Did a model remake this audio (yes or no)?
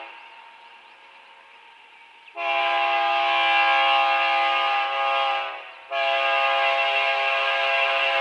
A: no